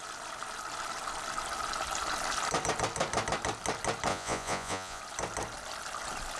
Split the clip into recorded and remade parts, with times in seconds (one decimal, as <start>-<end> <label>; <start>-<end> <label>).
0.0-4.1 recorded; 4.1-5.0 remade; 5.0-6.4 recorded